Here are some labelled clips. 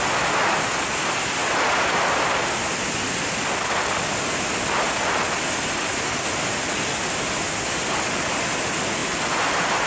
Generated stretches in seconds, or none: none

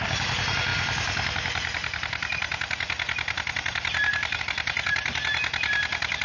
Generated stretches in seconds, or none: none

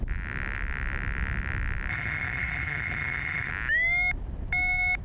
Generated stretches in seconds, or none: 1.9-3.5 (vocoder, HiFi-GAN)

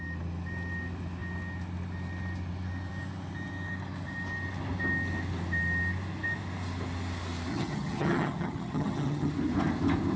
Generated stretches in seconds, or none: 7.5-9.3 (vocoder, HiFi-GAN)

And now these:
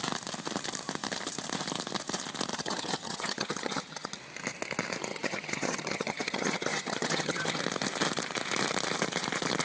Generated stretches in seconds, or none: 2.5-4.2 (vocoder, HiFi-GAN); 5.1-7.6

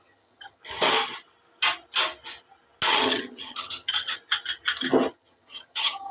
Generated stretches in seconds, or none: 0.0-0.6 (vocoder, HiFi-GAN); 2.9-4.2; 5.1-6.1

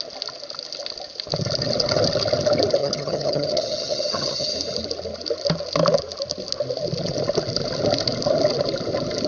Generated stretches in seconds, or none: 2.8-4.5 (vocoder, HiFi-GAN)

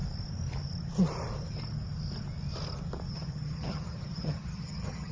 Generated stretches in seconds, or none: 3.1-5.1 (vocoder, HiFi-GAN)